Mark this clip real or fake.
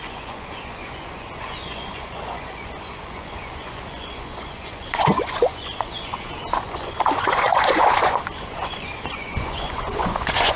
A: fake